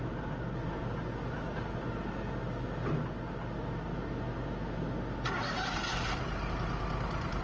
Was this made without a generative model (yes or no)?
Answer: yes